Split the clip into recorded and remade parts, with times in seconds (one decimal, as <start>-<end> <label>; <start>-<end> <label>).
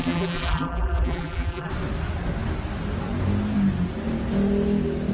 0.0-1.7 remade; 1.7-5.1 recorded